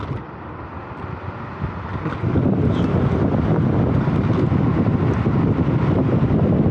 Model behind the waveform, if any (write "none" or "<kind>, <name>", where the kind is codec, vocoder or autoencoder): none